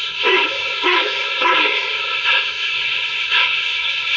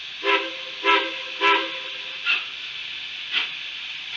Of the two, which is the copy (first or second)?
first